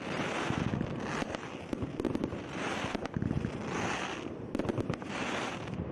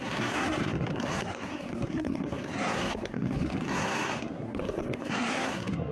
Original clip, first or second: first